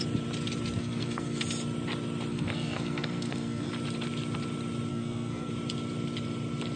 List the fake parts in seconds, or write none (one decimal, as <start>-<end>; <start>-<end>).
0.8-1.4; 2.3-3.7; 4.9-5.5